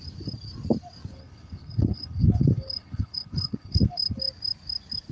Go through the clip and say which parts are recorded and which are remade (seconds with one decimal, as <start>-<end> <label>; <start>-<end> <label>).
0.0-1.1 recorded; 1.1-4.2 remade; 4.2-5.1 recorded